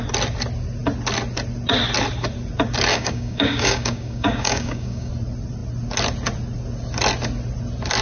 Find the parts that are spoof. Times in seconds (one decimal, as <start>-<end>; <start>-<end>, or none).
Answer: 2.9-5.1